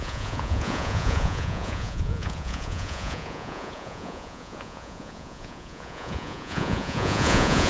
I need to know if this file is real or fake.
fake